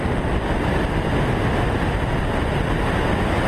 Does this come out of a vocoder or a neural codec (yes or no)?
no